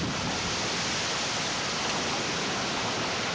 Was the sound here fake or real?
real